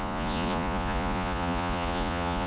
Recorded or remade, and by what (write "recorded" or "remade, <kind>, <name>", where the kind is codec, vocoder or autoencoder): remade, vocoder, Vocos